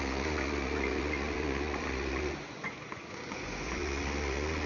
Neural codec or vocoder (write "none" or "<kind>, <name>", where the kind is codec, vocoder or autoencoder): vocoder, Vocos